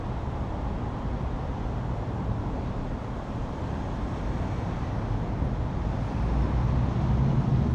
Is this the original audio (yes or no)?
yes